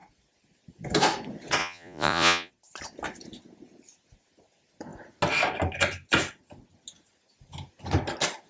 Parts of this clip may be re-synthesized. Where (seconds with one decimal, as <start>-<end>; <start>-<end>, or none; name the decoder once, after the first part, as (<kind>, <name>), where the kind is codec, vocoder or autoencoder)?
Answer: 1.6-2.5 (vocoder, Vocos)

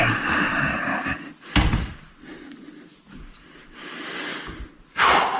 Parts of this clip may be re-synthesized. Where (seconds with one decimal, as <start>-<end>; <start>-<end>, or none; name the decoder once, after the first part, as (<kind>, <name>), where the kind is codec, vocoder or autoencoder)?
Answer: none

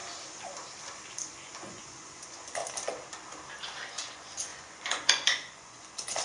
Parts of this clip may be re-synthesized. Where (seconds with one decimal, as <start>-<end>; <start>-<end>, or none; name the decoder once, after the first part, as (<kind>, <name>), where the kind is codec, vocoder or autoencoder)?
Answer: 1.1-2.6 (vocoder, Vocos); 3.9-6.2

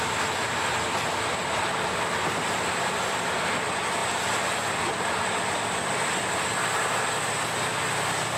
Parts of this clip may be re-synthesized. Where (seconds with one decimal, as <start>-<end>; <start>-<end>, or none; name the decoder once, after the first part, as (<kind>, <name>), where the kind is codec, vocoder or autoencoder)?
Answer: none

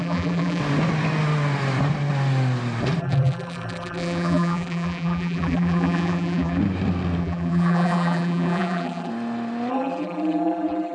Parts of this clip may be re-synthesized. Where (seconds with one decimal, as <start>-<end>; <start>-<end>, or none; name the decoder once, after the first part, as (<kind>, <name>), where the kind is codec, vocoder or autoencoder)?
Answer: 0.0-0.6 (vocoder, BigVGAN v2); 3.0-6.6; 7.2-9.1; 9.7-10.9